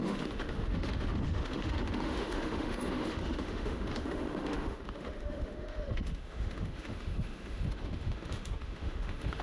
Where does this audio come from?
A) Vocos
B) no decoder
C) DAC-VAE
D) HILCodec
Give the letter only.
C